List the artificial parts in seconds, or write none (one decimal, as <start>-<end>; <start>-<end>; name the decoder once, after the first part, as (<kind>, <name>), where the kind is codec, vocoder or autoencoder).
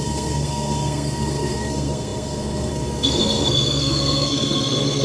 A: 0.0-5.0 (codec, SNAC)